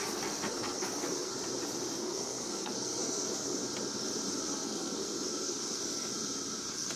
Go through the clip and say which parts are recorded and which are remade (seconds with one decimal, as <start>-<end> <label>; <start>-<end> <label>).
0.0-1.3 remade; 1.3-2.0 recorded; 2.0-3.6 remade; 3.6-4.3 recorded; 4.3-6.1 remade; 6.1-6.6 recorded; 6.6-7.0 remade